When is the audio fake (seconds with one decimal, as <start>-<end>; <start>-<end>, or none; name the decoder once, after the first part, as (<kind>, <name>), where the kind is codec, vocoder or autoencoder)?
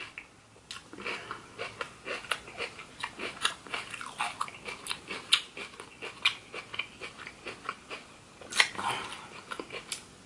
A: 2.8-3.9 (vocoder, BigVGAN v2)